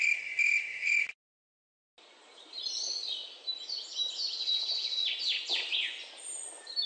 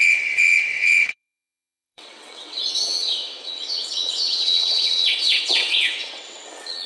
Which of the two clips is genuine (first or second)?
first